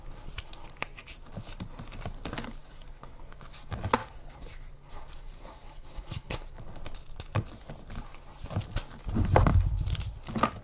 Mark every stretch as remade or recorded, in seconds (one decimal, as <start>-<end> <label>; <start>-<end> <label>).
0.0-2.6 recorded; 2.6-3.4 remade; 3.4-4.0 recorded; 4.0-6.6 remade; 6.6-10.6 recorded